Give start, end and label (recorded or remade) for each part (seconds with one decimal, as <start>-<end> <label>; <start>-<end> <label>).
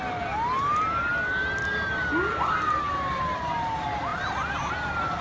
0.0-5.2 recorded